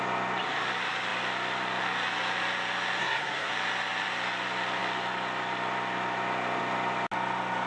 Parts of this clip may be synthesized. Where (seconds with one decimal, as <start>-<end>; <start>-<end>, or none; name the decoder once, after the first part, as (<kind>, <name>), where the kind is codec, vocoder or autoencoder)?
3.0-3.5 (codec, SNAC)